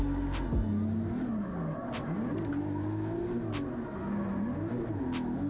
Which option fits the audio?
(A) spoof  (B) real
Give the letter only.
B